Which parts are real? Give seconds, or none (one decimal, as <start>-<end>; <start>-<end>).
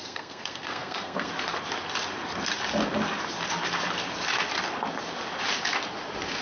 1.3-6.4